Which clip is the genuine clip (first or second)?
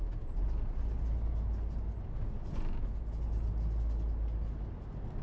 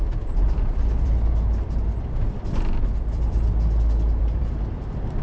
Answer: first